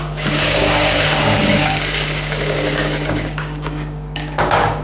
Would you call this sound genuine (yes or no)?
no